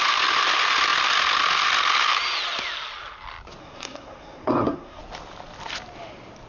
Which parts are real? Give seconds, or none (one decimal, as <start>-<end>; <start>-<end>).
0.0-3.6; 5.0-6.5